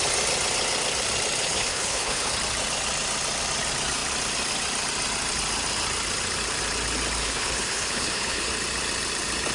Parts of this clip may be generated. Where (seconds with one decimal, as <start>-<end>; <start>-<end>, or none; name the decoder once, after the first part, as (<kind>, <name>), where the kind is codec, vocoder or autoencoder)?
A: 1.4-2.3 (codec, HILCodec); 7.2-8.5